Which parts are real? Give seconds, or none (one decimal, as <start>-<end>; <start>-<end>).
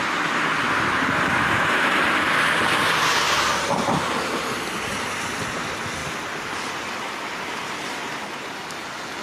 0.0-9.2